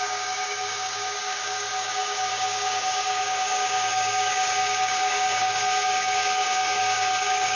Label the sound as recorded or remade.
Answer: remade